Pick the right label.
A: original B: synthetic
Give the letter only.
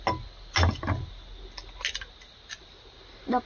A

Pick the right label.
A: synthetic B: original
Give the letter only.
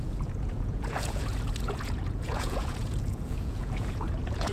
A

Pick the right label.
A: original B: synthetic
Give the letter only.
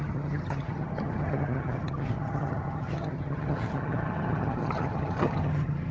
B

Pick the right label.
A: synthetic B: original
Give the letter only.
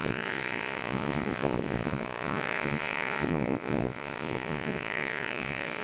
A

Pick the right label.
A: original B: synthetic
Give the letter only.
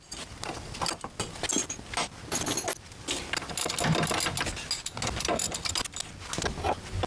A